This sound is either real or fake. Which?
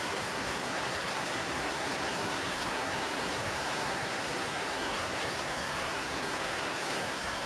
fake